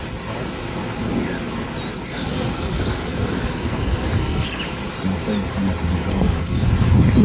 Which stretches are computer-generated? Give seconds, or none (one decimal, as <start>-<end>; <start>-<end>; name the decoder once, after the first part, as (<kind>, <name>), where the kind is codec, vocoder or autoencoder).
2.1-4.6 (codec, SNAC); 6.1-6.7